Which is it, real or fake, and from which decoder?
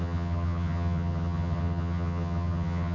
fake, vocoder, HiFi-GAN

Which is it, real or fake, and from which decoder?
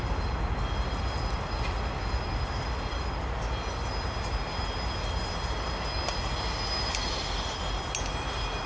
real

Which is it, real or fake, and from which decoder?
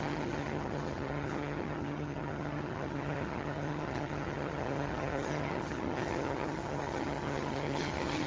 fake, vocoder, HiFi-GAN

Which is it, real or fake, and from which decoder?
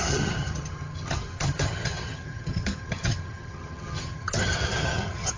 fake, vocoder, HiFi-GAN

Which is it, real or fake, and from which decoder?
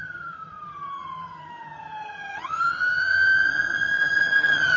fake, vocoder, HiFi-GAN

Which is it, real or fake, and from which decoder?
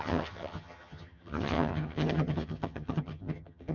fake, vocoder, HiFi-GAN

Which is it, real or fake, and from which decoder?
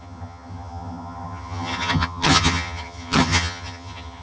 fake, vocoder, HiFi-GAN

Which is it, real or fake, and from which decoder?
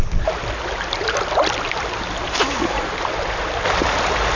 real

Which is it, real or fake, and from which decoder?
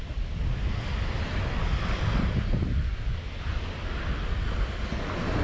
real